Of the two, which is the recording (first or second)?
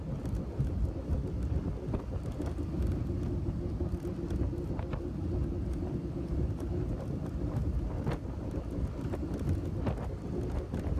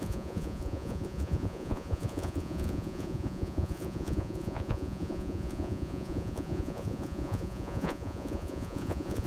first